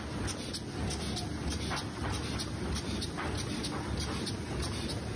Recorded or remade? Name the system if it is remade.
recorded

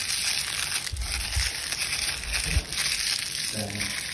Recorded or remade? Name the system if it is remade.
recorded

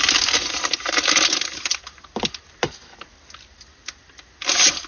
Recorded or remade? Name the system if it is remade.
recorded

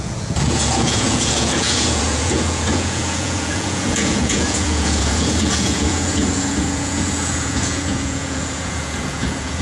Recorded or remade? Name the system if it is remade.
remade, vocoder, Vocos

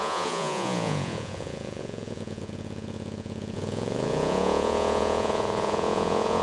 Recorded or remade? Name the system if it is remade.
remade, vocoder, Vocos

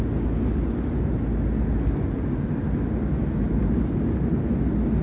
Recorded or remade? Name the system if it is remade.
recorded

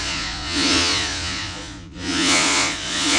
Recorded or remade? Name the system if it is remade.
remade, vocoder, Vocos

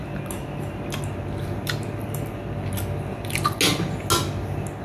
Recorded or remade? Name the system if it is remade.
recorded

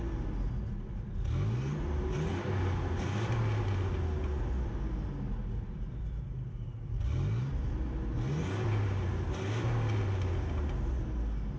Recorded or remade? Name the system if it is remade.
recorded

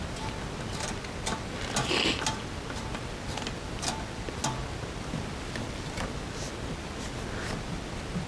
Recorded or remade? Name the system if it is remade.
recorded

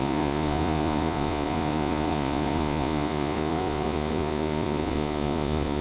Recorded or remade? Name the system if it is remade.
remade, vocoder, Vocos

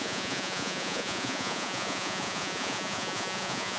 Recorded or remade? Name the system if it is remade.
remade, vocoder, Vocos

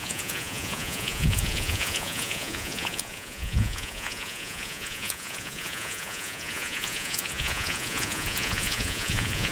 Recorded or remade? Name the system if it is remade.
remade, vocoder, Vocos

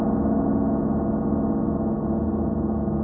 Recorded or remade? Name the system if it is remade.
remade, vocoder, Vocos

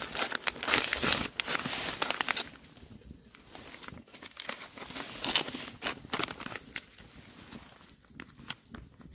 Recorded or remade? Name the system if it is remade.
recorded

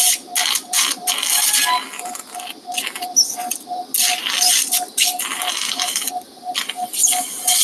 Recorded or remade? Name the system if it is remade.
recorded